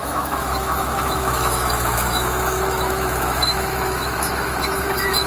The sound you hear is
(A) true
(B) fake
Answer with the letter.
B